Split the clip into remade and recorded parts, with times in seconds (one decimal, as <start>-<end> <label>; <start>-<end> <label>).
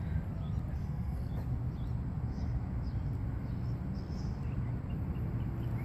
0.0-0.8 recorded; 0.8-1.3 remade; 1.3-5.8 recorded